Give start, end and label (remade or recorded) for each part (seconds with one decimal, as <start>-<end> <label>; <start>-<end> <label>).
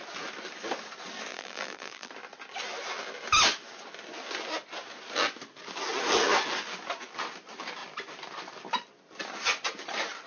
0.0-1.3 recorded; 1.3-2.1 remade; 2.1-10.3 recorded